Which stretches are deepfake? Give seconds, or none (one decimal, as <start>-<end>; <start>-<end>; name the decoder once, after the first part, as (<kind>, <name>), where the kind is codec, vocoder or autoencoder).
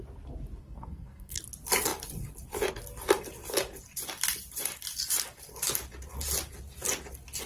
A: 0.6-1.4 (codec, SNAC)